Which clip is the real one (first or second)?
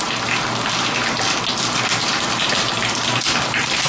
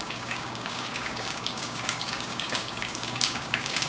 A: first